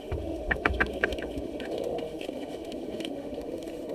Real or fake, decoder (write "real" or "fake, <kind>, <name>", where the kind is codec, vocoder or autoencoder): fake, autoencoder, DAC-VAE